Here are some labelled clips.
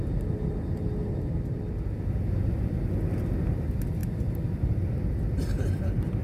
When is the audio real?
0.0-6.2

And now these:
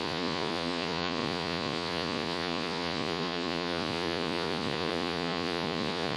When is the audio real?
none